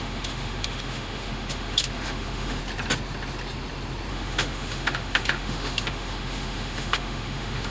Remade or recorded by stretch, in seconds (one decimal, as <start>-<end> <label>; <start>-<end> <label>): 0.0-2.6 remade; 2.6-4.1 recorded; 4.1-7.7 remade